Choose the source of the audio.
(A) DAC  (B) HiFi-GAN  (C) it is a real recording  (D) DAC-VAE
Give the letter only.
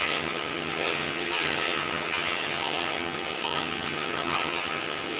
B